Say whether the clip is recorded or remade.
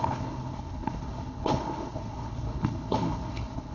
remade